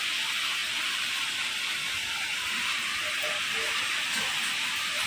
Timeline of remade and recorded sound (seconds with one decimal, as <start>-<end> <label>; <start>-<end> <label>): 0.0-0.6 recorded; 0.6-1.1 remade; 1.1-5.1 recorded